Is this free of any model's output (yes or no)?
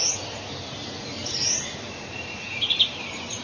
no